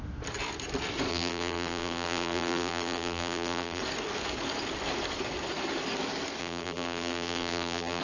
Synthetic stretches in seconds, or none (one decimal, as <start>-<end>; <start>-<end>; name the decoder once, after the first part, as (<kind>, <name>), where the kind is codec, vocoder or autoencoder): 1.1-3.8 (vocoder, BigVGAN v2); 6.4-8.0